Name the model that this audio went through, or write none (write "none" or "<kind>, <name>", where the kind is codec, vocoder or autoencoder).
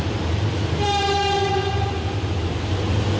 none